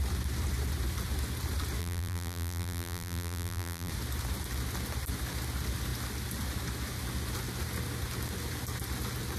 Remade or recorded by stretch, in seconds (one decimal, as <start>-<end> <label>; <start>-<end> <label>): 0.0-1.8 recorded; 1.8-3.9 remade; 3.9-9.4 recorded